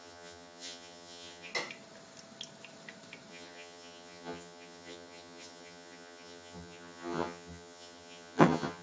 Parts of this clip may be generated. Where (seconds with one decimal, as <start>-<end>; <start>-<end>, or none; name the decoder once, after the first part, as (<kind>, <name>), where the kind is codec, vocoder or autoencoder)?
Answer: 0.0-1.5 (vocoder, HiFi-GAN); 3.3-8.8